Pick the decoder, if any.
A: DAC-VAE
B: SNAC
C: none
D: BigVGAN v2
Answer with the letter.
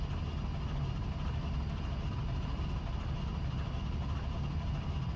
C